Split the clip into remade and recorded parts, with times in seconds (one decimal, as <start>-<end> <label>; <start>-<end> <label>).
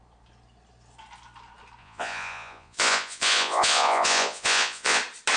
0.0-1.8 recorded; 1.8-5.0 remade; 5.0-5.4 recorded